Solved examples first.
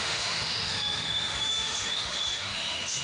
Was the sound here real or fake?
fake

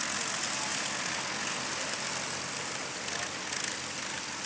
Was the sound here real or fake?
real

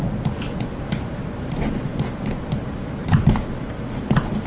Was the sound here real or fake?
real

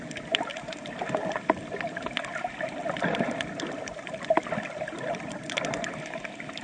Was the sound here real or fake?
real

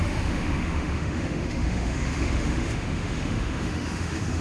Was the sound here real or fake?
fake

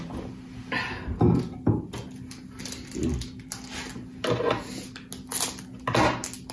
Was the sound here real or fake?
real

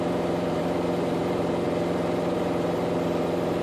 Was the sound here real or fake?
fake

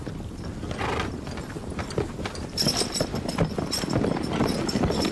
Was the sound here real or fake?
real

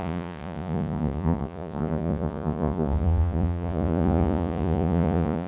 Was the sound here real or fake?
fake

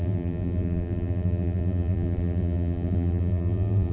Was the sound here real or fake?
fake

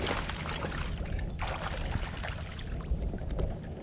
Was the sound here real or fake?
real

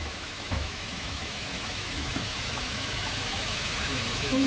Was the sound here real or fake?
fake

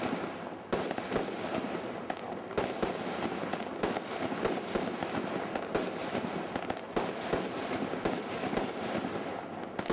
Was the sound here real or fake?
real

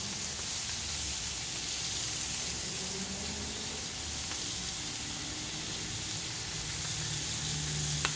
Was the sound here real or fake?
real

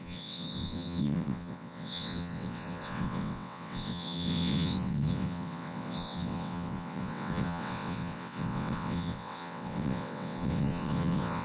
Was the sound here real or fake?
fake